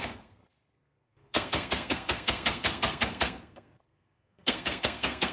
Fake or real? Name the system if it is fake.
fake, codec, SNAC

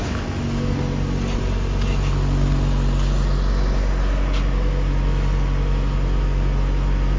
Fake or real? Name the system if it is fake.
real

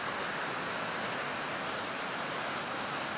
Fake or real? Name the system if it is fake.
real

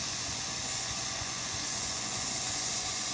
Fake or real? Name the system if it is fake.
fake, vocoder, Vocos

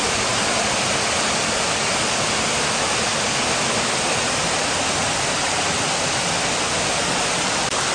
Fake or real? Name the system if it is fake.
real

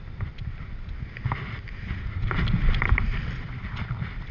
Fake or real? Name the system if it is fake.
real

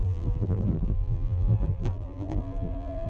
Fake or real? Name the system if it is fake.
fake, vocoder, BigVGAN v2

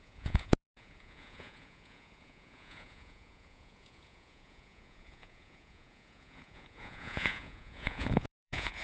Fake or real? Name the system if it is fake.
fake, vocoder, Vocos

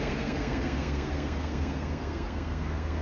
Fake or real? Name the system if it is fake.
fake, codec, SNAC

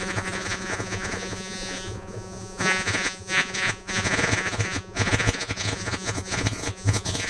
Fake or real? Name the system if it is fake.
fake, vocoder, Vocos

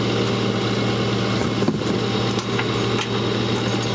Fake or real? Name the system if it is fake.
real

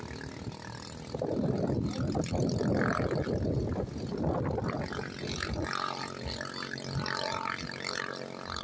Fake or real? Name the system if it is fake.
real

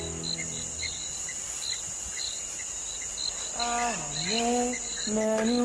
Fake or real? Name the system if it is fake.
real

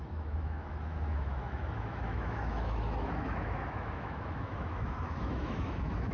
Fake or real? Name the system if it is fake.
fake, autoencoder, DAC-VAE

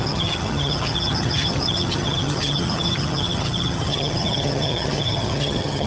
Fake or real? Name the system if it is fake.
fake, vocoder, HiFi-GAN